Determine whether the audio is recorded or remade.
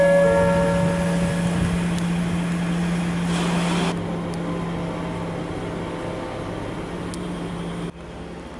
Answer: recorded